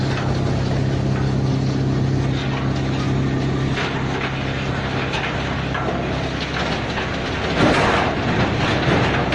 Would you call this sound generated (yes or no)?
no